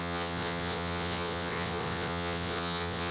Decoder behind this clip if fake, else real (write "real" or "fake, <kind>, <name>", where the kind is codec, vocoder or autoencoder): fake, vocoder, WaveNeXt